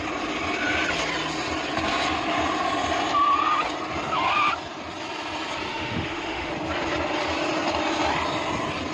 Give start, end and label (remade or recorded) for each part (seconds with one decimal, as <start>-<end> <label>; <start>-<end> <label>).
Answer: 0.0-5.7 recorded; 5.7-6.5 remade; 6.5-8.9 recorded